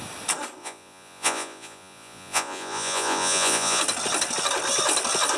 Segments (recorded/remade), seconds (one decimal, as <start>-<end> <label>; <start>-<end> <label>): 0.0-0.6 recorded; 0.6-3.8 remade; 3.8-5.4 recorded